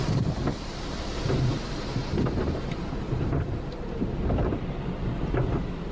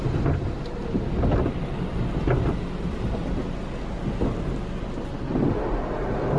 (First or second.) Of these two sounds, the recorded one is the second